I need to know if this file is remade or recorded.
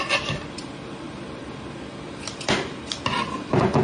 recorded